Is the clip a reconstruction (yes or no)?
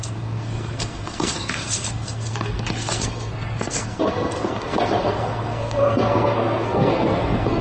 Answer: yes